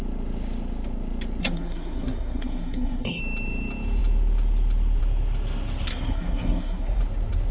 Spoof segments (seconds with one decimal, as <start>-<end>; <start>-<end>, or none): 1.4-3.2; 5.9-7.0